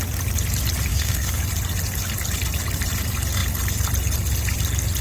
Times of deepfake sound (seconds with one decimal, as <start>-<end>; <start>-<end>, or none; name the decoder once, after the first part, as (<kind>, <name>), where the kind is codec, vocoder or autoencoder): 0.9-1.4 (codec, SNAC)